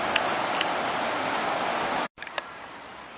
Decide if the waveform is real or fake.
fake